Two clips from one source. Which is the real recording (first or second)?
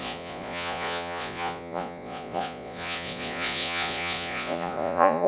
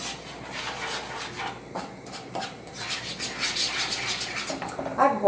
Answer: second